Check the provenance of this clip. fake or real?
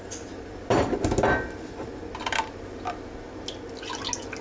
real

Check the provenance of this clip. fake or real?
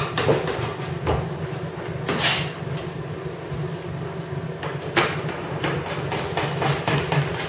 real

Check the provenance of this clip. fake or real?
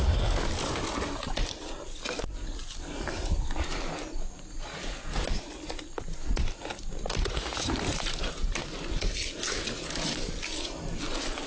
real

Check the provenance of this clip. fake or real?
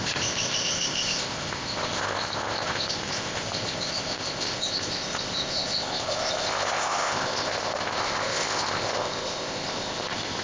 fake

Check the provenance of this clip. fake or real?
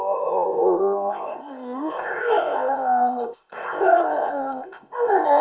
fake